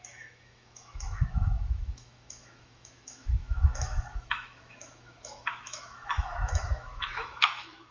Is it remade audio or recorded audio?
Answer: remade